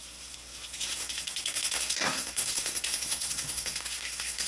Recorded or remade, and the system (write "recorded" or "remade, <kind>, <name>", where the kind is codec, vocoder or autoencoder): remade, codec, SNAC